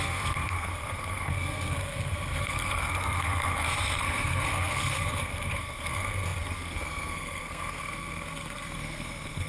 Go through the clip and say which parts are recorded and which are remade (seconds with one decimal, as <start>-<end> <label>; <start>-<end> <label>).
0.0-9.5 remade